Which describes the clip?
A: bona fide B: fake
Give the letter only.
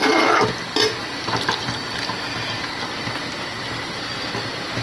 A